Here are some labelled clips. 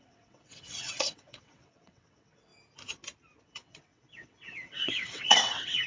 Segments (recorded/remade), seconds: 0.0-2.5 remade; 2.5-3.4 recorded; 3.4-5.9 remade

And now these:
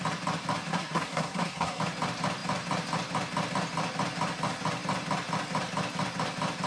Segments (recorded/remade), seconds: 0.0-0.7 recorded; 0.7-1.8 remade; 1.8-6.7 recorded

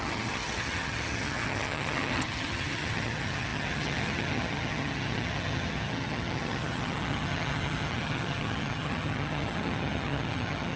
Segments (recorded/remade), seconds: 0.0-10.8 remade

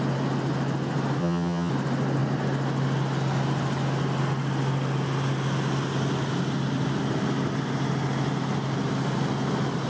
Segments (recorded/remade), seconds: 0.0-1.2 recorded; 1.2-1.7 remade; 1.7-9.9 recorded

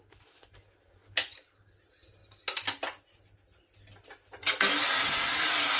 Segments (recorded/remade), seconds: 0.0-5.8 recorded

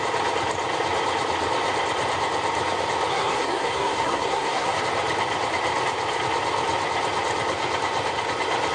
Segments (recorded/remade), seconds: 0.0-3.1 recorded; 3.1-4.8 remade; 4.8-8.7 recorded